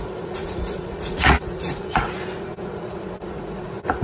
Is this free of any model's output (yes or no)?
no